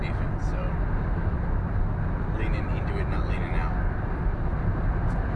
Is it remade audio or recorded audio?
recorded